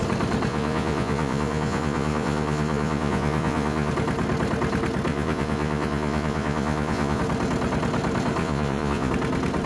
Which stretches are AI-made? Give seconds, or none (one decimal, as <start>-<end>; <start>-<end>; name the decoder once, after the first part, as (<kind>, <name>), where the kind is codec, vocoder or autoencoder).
0.5-3.9 (vocoder, Vocos); 5.1-7.2; 8.4-9.1